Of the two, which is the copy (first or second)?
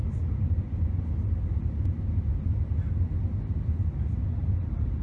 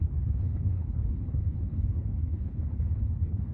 second